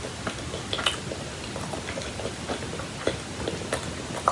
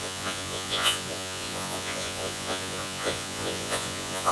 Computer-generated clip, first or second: second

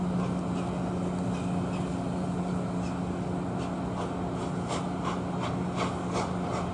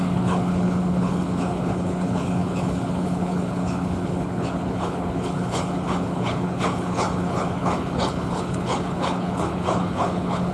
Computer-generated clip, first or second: second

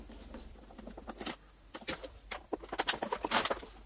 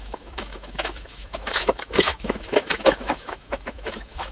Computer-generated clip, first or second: second